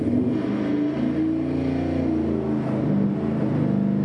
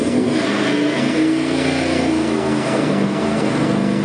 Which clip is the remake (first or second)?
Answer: second